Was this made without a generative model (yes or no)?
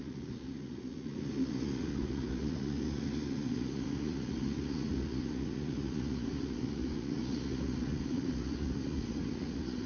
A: no